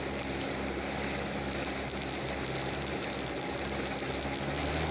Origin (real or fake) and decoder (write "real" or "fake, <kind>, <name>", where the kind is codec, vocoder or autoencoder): real